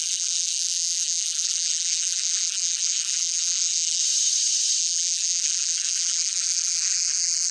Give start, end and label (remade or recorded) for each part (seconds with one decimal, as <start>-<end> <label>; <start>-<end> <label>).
0.0-4.0 remade; 4.0-4.8 recorded; 4.8-7.5 remade